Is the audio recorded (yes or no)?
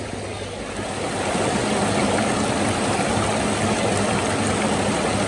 yes